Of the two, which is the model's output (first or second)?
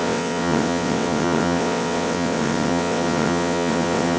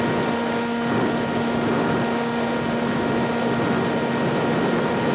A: first